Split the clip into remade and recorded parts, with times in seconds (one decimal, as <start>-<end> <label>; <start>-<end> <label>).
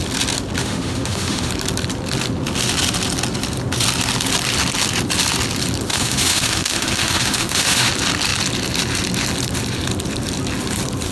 0.0-0.6 recorded; 0.6-1.5 remade; 1.5-5.9 recorded; 5.9-7.9 remade; 7.9-11.1 recorded